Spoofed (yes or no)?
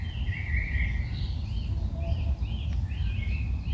no